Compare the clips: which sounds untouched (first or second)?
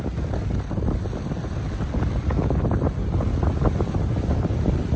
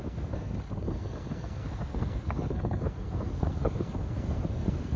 first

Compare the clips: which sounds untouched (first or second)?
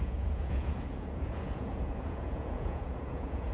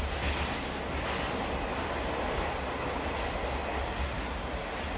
second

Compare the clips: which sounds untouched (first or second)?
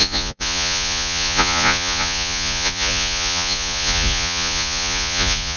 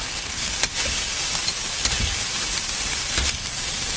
second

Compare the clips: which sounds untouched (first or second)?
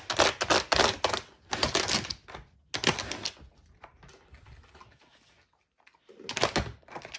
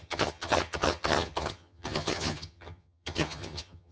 first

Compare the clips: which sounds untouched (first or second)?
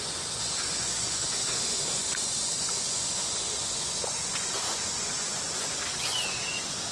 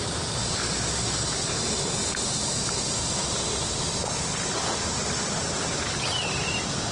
second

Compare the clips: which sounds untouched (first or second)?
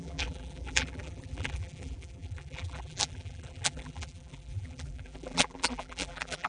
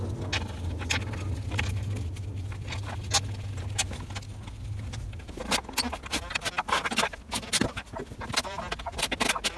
second